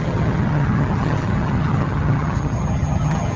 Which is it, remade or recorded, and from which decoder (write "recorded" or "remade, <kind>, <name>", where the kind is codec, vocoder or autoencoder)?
remade, vocoder, HiFi-GAN